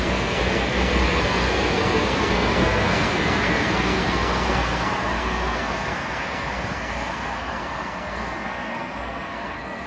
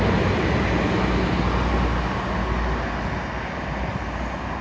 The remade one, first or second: first